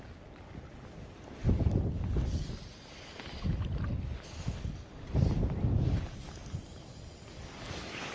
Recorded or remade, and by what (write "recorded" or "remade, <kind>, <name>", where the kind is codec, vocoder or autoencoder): recorded